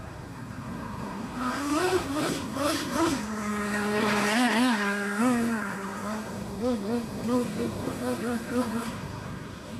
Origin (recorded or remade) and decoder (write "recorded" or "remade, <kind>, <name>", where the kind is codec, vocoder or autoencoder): remade, codec, SNAC